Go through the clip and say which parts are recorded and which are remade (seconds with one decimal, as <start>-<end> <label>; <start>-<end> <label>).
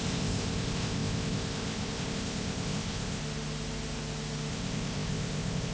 0.0-3.2 remade; 3.2-4.5 recorded; 4.5-5.7 remade